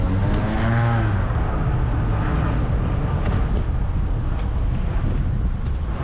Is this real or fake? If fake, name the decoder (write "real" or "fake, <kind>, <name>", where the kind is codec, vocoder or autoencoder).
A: real